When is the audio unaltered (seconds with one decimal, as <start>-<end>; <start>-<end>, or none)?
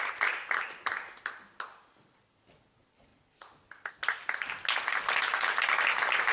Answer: 0.0-6.3